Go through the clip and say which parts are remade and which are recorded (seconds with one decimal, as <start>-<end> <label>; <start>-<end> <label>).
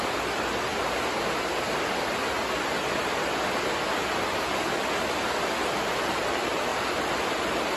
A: 0.0-0.7 remade; 0.7-5.4 recorded; 5.4-7.8 remade